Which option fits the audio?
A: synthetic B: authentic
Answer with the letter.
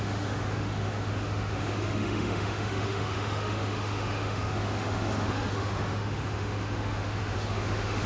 A